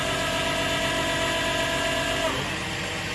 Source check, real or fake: real